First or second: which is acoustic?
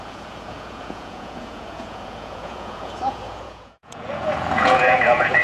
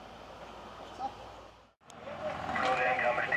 second